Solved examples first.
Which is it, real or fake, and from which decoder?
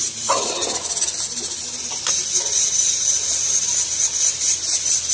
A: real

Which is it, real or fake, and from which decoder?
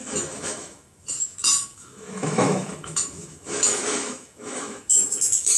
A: fake, autoencoder, DAC-VAE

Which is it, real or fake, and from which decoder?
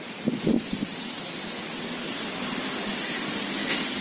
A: real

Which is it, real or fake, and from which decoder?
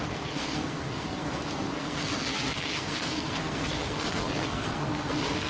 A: fake, codec, SNAC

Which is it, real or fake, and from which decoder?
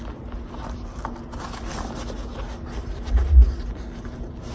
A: real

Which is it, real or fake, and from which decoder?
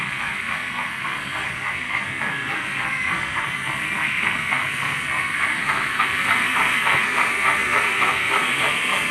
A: fake, codec, SNAC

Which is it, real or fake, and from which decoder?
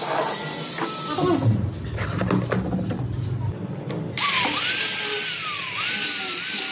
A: real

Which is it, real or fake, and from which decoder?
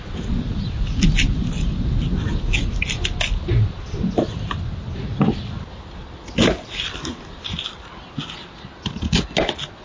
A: real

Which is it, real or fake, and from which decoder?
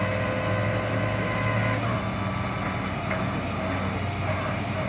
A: real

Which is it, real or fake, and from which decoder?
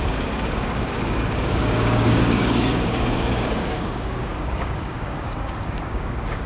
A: fake, codec, DAC